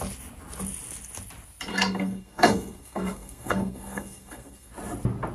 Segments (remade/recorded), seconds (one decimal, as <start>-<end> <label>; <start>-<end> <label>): 0.0-1.7 recorded; 1.7-4.7 remade; 4.7-5.3 recorded